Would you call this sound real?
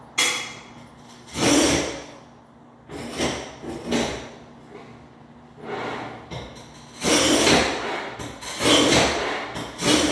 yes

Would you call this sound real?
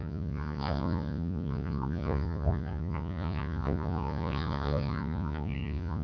no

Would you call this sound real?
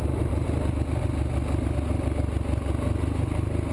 yes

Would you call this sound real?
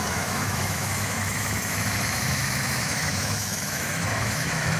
no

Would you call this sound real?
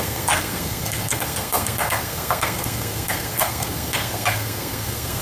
no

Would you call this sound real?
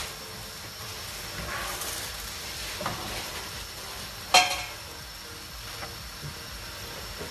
yes